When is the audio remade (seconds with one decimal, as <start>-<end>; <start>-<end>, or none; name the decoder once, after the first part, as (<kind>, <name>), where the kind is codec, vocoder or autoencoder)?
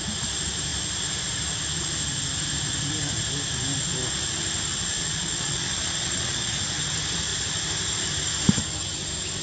4.7-6.5 (vocoder, Vocos)